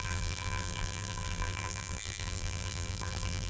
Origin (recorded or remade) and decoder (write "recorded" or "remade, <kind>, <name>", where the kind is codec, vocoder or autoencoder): remade, vocoder, BigVGAN v2